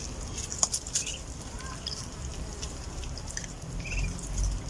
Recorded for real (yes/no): yes